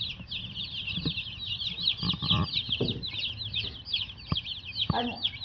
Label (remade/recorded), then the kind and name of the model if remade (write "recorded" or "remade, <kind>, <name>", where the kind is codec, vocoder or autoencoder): recorded